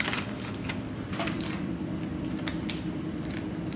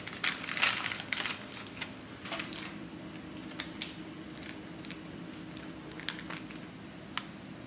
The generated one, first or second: first